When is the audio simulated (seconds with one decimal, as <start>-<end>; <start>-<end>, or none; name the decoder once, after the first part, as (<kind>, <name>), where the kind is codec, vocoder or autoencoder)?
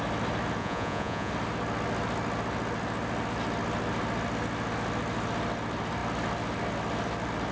0.6-1.3 (vocoder, Vocos)